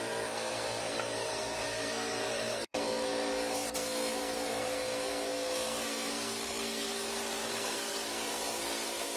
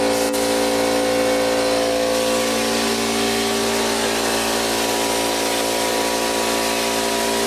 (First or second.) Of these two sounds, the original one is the second